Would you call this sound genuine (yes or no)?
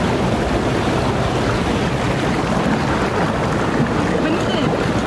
yes